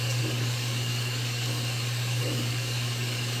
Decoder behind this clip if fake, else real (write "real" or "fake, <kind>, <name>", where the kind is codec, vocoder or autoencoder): fake, codec, DAC